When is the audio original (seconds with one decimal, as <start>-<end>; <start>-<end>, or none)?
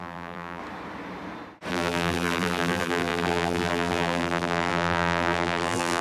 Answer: 0.6-1.7